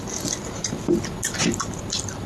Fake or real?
real